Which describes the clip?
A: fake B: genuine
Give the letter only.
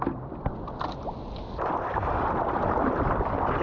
B